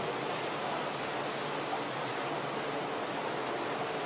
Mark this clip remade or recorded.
recorded